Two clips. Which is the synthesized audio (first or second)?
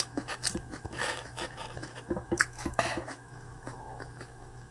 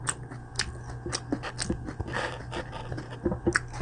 first